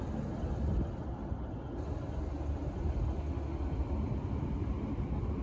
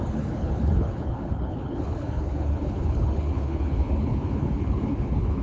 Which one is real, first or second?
first